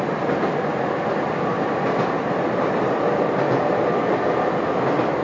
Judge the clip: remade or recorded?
recorded